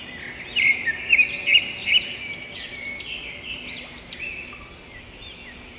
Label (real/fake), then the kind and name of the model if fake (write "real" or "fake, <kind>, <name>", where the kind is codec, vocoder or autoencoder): real